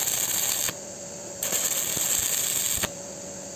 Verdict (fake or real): real